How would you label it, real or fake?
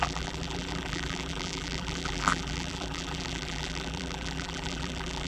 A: fake